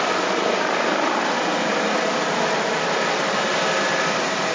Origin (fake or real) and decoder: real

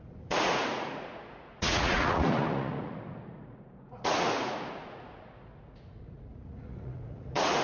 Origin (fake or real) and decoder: fake, vocoder, Vocos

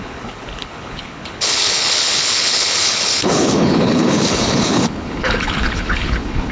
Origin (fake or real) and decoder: fake, codec, HILCodec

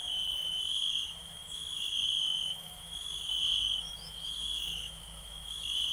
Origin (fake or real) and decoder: fake, autoencoder, DAC-VAE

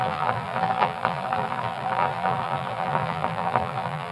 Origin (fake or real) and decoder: fake, vocoder, BigVGAN v2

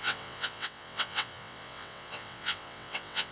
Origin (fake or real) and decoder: fake, vocoder, WaveNeXt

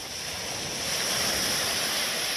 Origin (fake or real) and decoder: real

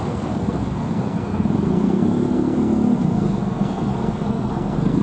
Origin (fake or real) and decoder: fake, codec, SNAC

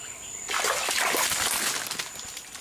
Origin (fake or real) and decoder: real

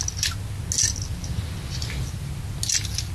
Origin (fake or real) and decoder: real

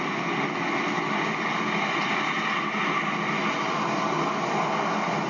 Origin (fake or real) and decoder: real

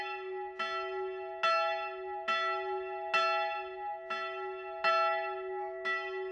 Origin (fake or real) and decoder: real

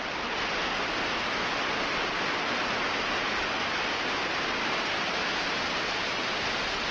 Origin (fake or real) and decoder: real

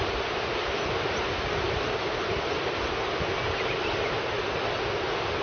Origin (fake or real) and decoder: real